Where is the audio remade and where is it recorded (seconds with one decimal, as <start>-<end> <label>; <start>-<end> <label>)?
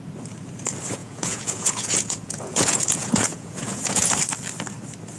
0.0-1.0 recorded; 1.0-4.1 remade; 4.1-5.2 recorded